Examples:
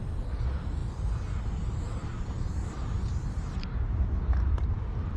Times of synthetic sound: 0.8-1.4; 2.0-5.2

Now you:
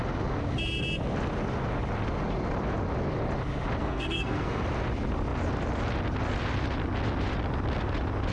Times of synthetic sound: 3.8-4.6

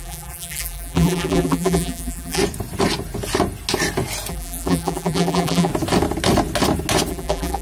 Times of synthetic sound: 0.0-2.4; 4.3-5.7; 7.1-7.6

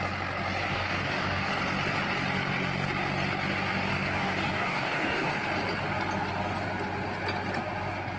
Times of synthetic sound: 0.7-1.5; 3.9-5.3

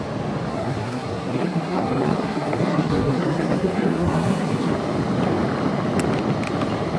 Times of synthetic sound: 0.5-4.7

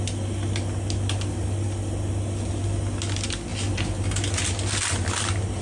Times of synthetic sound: none

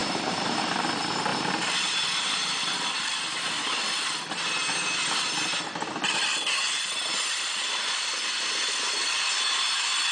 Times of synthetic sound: 0.0-0.7; 1.3-4.2

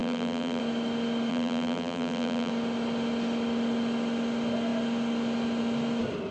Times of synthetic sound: 0.0-0.6; 1.3-2.5